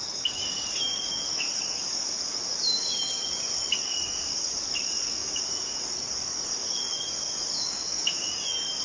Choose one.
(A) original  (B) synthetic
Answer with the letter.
B